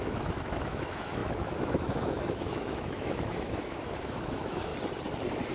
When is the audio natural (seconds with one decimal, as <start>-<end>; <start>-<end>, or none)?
4.7-5.5